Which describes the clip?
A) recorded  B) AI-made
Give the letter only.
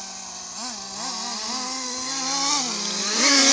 A